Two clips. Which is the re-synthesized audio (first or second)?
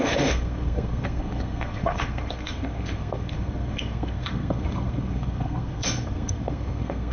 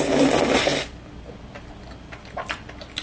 first